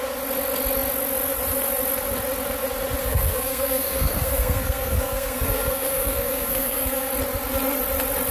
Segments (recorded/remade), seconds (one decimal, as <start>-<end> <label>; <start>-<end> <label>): 0.0-3.0 recorded; 3.0-7.1 remade; 7.1-8.3 recorded